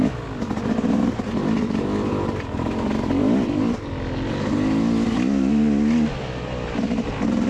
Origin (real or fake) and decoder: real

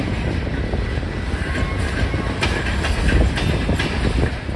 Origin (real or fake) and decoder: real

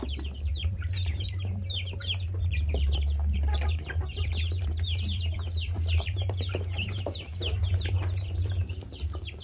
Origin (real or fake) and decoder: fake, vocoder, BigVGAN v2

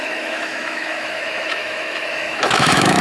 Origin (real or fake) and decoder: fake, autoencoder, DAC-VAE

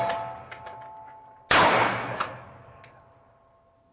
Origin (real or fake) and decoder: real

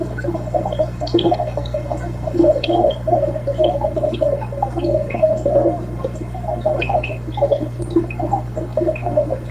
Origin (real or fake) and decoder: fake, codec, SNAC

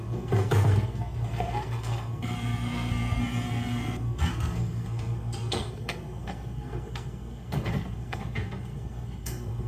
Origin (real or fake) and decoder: fake, codec, SNAC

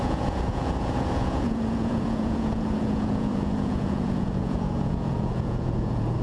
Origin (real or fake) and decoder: fake, vocoder, Vocos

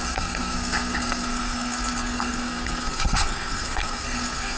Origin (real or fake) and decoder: fake, codec, SNAC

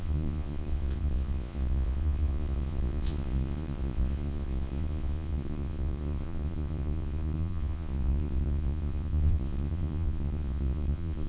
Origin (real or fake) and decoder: fake, vocoder, Vocos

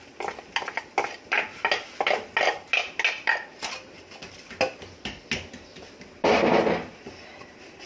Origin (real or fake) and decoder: real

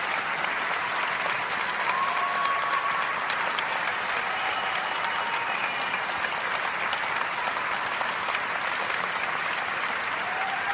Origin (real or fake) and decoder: real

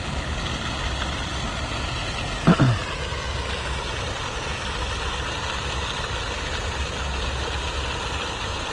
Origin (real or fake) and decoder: real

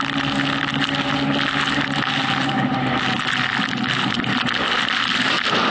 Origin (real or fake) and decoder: real